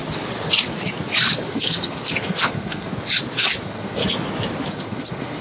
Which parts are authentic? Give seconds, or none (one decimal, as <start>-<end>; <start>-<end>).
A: 0.0-1.5; 2.9-3.6; 4.0-4.7